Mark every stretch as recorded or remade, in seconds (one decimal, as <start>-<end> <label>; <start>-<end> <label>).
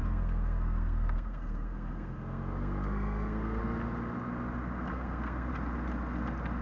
0.0-3.6 remade; 3.6-4.9 recorded; 4.9-5.5 remade; 5.5-6.6 recorded